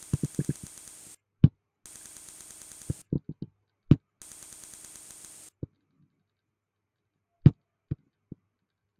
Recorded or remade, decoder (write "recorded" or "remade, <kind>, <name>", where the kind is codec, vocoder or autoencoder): recorded